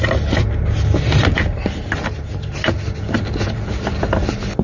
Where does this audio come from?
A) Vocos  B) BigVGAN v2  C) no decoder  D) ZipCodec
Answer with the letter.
C